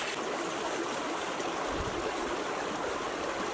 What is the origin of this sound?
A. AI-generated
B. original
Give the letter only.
B